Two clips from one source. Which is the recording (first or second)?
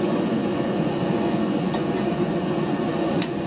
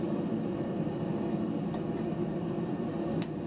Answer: second